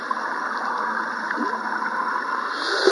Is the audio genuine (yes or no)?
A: no